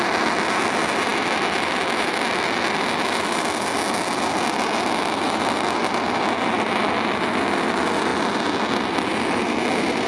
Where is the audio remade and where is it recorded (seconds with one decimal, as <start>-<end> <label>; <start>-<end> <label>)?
0.0-10.1 recorded